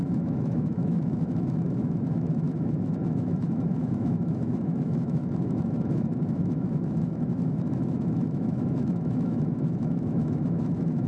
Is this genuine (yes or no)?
no